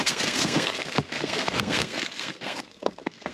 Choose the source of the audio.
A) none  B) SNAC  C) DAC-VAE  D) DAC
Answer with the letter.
B